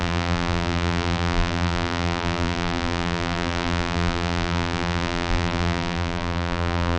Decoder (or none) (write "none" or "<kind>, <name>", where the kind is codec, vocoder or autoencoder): vocoder, BigVGAN v2